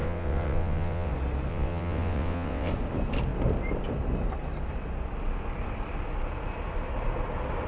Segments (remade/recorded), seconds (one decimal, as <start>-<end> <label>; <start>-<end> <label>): 0.0-1.1 remade; 1.1-1.5 recorded; 1.5-2.7 remade; 2.7-7.7 recorded